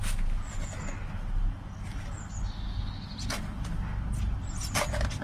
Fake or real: real